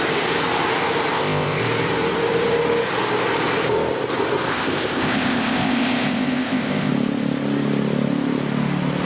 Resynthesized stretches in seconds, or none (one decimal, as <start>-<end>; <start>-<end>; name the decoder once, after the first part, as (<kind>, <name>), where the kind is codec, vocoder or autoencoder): 1.1-1.6 (codec, ZipCodec); 4.5-6.9